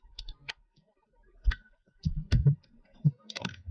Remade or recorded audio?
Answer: remade